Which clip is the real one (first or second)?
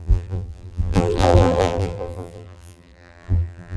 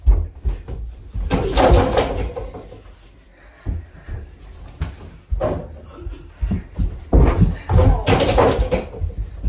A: second